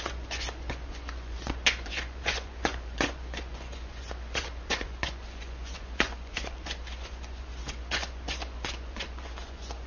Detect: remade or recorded remade